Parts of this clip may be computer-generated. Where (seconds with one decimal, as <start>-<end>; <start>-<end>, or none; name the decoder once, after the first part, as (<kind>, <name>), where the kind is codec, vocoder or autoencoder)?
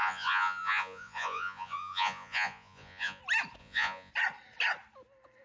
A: 0.0-3.2 (vocoder, Vocos); 3.6-4.1